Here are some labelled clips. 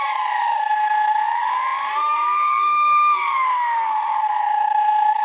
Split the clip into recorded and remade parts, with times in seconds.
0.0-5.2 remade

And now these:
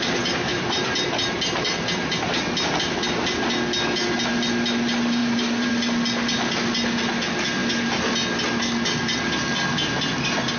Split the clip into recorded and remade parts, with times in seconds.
0.0-0.5 recorded; 0.5-2.2 remade; 2.2-5.2 recorded; 5.2-5.7 remade; 5.7-10.6 recorded

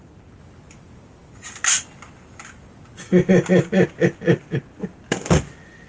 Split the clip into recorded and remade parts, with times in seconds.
0.0-5.9 recorded

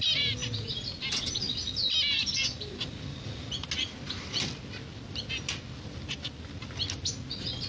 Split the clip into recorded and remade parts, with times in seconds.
0.0-7.7 recorded